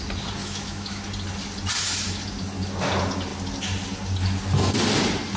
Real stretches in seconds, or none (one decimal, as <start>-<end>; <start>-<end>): 0.0-0.4; 1.0-5.4